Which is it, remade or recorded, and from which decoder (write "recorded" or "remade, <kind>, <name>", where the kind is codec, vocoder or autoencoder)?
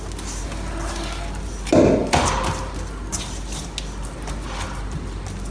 recorded